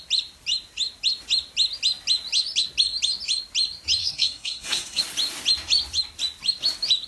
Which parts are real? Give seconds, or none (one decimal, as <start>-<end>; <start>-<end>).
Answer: 0.0-4.0; 5.0-7.1

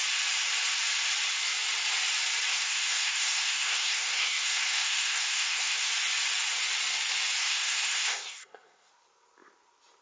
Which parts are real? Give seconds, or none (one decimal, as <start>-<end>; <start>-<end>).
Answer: 0.0-2.5; 5.9-7.4; 8.9-10.0

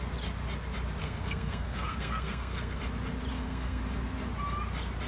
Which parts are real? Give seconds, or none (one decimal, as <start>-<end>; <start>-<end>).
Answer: 0.0-1.0; 2.8-3.3; 3.8-5.1

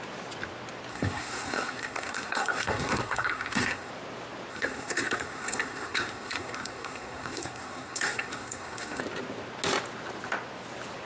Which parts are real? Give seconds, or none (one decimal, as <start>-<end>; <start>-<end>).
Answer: 0.0-0.9; 3.9-4.5; 9.0-11.1

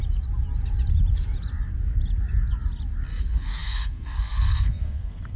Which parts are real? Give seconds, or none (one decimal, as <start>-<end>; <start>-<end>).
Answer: 0.0-3.2

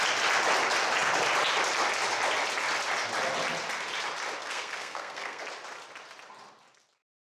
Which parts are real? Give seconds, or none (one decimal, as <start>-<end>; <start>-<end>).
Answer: 0.0-4.4; 5.4-7.2